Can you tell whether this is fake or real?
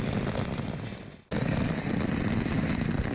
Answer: real